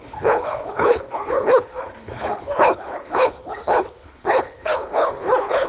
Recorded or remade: remade